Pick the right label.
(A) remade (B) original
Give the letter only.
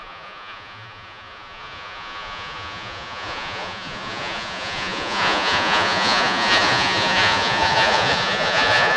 A